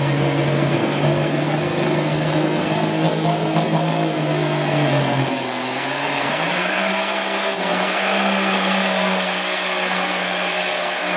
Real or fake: fake